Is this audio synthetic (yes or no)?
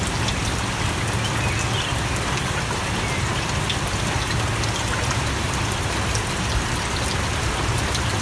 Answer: no